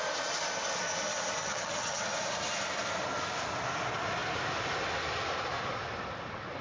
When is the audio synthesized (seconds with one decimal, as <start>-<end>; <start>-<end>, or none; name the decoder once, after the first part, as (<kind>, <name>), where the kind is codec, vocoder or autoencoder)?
1.4-2.0 (vocoder, HiFi-GAN)